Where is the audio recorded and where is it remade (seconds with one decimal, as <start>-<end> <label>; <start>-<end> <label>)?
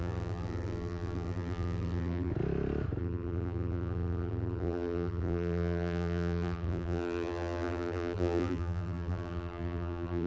0.0-2.3 remade; 2.3-3.0 recorded; 3.0-10.3 remade